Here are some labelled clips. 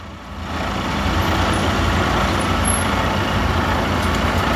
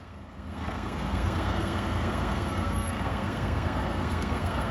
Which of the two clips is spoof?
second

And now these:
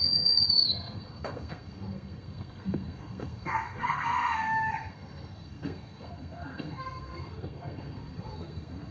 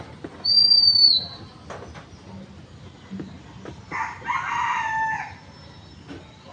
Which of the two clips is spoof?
first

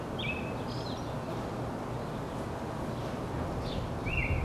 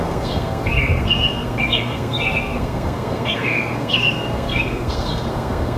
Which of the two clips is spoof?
second